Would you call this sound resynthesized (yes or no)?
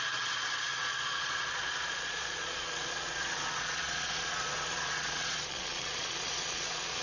yes